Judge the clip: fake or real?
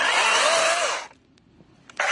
real